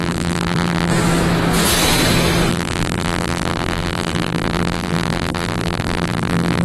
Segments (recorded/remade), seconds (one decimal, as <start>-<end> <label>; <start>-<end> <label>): 0.0-0.9 remade; 0.9-2.5 recorded; 2.5-6.6 remade